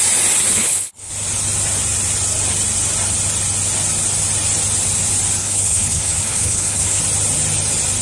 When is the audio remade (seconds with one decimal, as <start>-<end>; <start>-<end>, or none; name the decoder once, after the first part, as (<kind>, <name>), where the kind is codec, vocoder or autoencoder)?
0.5-1.1 (codec, HILCodec); 5.4-7.0